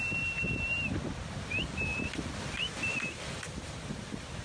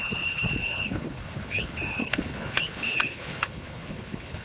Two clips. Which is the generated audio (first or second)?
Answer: second